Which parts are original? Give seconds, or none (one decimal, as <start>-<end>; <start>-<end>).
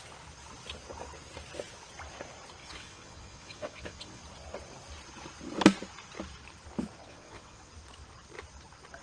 0.0-2.6; 4.2-7.0; 7.7-9.0